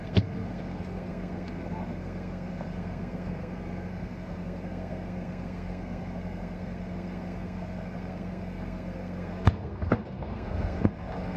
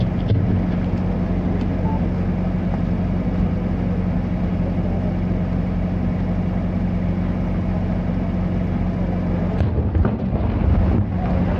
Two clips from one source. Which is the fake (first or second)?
first